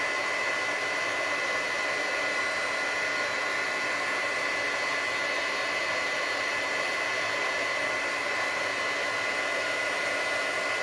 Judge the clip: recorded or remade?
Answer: recorded